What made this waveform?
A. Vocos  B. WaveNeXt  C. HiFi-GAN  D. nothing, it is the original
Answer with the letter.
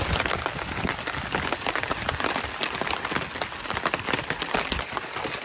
D